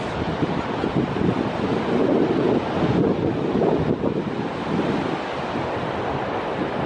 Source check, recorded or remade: recorded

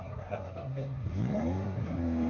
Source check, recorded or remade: remade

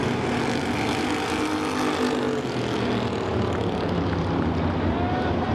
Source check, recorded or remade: recorded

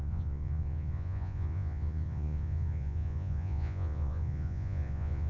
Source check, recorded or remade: remade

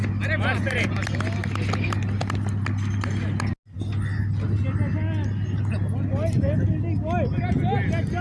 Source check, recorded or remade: recorded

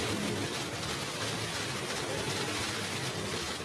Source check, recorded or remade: recorded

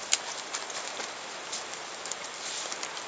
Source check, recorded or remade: recorded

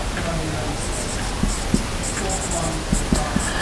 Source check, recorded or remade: recorded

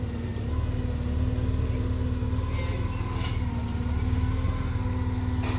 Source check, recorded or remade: recorded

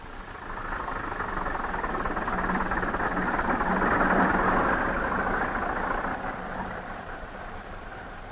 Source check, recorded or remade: remade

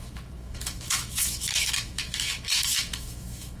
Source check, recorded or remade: remade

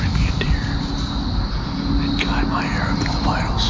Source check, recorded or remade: recorded